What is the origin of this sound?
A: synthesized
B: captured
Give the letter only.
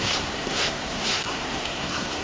A